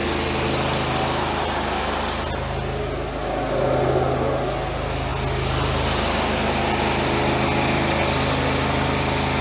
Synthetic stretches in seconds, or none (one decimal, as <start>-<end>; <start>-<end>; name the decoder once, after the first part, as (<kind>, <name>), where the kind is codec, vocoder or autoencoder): none